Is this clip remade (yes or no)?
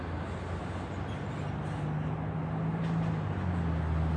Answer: no